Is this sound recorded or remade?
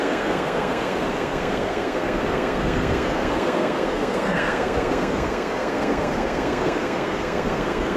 remade